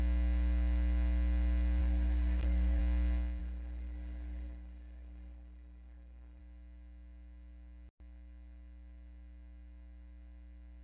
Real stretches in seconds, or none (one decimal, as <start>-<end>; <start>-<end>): 0.0-1.8; 2.8-3.4; 6.4-10.8

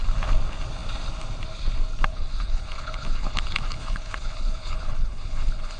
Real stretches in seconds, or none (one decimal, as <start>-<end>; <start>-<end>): 0.0-2.1

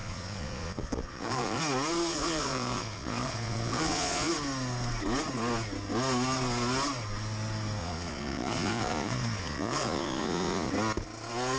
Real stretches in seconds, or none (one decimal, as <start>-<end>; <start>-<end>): 1.6-2.1; 4.3-7.8; 10.7-11.6

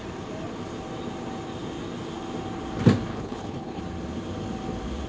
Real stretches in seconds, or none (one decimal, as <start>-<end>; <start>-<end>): 0.0-3.1; 3.8-5.1

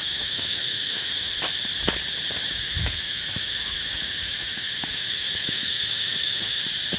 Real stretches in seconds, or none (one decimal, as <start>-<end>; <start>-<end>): 1.4-2.4; 6.6-7.0

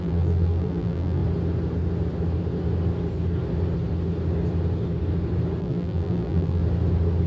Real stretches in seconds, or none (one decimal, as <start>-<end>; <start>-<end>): 1.2-5.6; 6.6-7.3

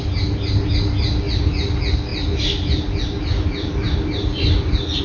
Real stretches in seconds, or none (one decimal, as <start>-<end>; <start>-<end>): 0.0-5.0